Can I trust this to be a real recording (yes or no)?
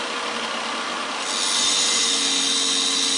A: yes